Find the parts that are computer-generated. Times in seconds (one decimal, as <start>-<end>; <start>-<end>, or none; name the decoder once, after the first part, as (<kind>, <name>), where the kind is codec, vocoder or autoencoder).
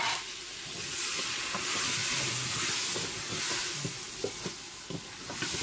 none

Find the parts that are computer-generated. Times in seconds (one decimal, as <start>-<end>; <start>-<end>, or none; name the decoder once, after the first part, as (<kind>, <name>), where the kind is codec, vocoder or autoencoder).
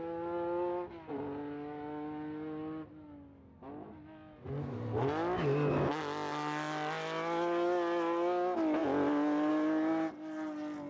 none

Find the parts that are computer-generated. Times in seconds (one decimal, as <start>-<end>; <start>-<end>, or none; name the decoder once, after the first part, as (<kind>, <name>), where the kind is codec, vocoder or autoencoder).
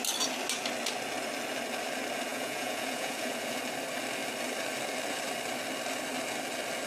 2.3-3.6 (vocoder, Vocos)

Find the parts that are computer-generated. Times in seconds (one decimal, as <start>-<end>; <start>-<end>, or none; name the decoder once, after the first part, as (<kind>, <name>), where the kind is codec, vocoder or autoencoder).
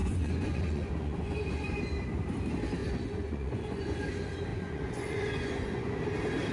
0.0-1.8 (vocoder, Vocos); 2.8-4.0; 4.5-6.0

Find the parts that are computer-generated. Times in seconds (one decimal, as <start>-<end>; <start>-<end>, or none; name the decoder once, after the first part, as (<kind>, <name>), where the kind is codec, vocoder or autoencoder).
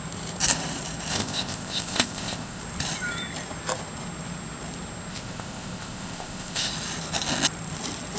1.1-2.6 (codec, ZipCodec); 5.1-6.7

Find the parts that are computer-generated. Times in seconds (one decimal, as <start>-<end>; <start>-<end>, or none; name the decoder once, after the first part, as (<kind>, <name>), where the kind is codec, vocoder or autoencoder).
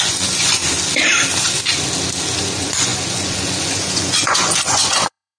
0.0-0.6 (vocoder, Vocos); 2.4-5.4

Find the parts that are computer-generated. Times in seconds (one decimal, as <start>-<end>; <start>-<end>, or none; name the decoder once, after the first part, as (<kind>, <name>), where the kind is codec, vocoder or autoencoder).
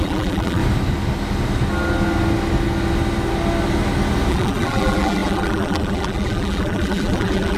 0.0-0.6 (vocoder, BigVGAN v2); 4.3-7.6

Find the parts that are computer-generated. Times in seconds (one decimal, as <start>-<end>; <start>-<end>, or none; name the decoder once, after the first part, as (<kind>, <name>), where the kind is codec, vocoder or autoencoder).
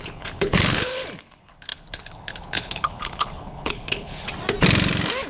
0.0-4.3 (codec, HILCodec)